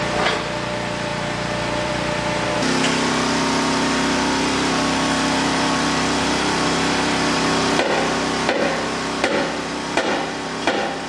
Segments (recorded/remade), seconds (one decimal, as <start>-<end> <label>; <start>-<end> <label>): 0.0-1.1 recorded; 1.1-1.9 remade; 1.9-11.1 recorded